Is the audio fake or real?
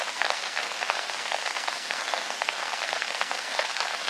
fake